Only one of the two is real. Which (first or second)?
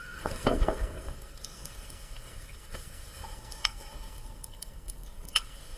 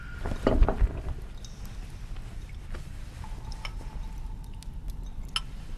second